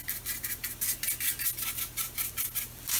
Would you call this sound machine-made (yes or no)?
no